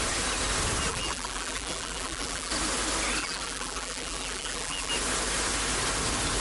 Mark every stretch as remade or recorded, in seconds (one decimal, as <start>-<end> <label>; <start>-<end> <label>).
0.0-0.9 recorded; 0.9-2.5 remade; 2.5-3.2 recorded; 3.2-4.9 remade; 4.9-6.4 recorded